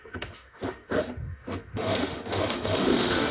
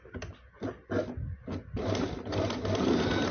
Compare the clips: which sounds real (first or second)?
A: second